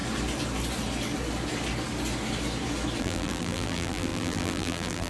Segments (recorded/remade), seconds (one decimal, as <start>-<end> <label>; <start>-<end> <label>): 0.0-3.0 recorded; 3.0-5.1 remade